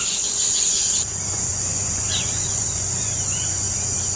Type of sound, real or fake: fake